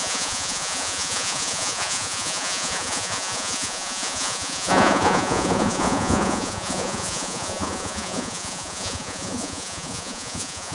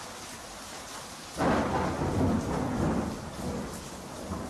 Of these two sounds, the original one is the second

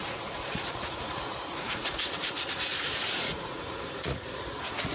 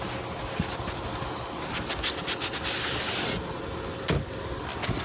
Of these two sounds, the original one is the second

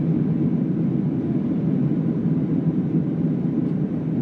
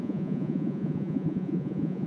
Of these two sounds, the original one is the first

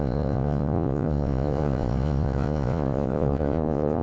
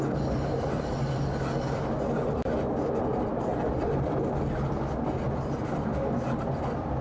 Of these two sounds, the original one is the second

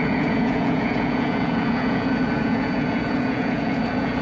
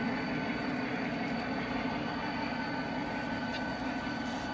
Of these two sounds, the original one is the second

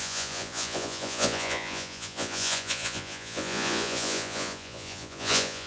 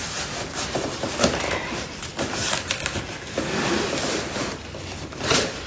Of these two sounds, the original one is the second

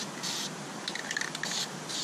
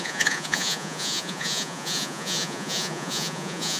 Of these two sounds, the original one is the first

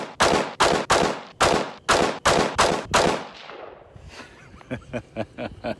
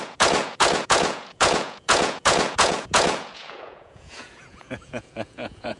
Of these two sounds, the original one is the first